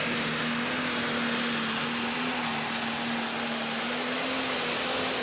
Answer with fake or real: real